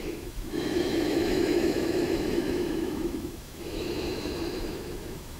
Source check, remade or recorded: remade